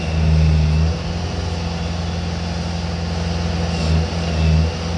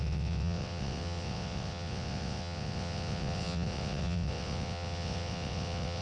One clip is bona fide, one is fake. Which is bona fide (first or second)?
first